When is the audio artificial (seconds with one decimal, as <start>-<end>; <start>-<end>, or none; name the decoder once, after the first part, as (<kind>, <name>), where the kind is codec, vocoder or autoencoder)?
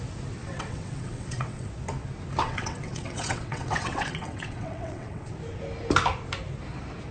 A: 0.4-1.7 (vocoder, WaveNeXt); 2.4-5.3